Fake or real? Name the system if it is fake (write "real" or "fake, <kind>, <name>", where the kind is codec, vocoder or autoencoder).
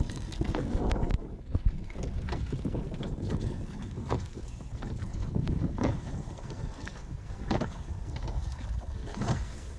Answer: fake, codec, SNAC